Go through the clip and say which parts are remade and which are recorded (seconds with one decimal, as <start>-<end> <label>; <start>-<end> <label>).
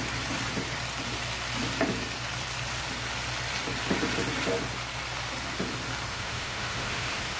0.0-6.1 recorded; 6.1-7.4 remade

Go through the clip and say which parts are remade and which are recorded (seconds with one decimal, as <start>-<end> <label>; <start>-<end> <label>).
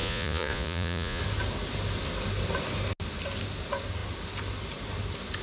0.0-1.2 remade; 1.2-5.4 recorded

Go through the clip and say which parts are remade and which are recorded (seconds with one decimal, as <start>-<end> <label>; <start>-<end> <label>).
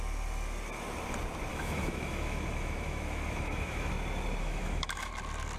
0.0-1.5 recorded; 1.5-3.9 remade; 3.9-4.4 recorded; 4.4-5.1 remade; 5.1-5.6 recorded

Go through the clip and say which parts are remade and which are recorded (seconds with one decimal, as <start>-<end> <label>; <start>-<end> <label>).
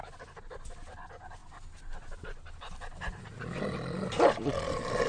0.0-5.1 recorded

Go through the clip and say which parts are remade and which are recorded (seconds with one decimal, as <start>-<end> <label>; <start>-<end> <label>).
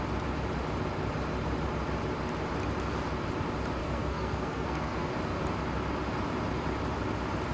0.0-3.8 recorded; 3.8-5.1 remade; 5.1-7.5 recorded